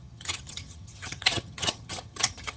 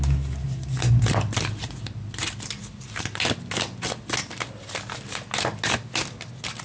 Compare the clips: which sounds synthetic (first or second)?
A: first